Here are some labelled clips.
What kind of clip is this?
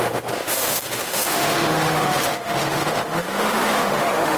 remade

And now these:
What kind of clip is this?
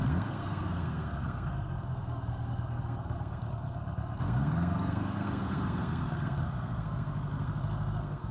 remade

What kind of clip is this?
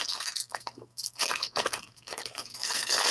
remade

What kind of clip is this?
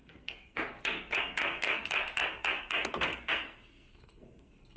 remade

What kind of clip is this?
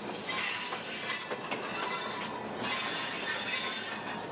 recorded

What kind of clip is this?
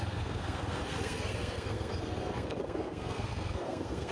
remade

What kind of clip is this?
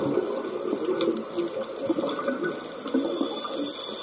recorded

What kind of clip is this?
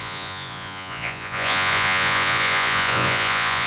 remade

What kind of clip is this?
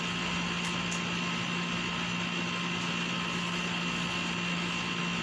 recorded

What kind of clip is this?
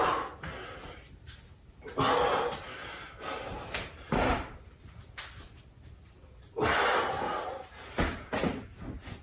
recorded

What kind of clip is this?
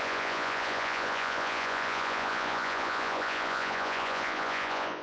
remade